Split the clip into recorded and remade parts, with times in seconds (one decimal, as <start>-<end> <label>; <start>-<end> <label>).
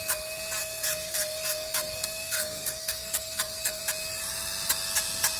0.0-0.6 recorded; 0.6-3.8 remade; 3.8-5.4 recorded